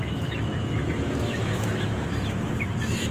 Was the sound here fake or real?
fake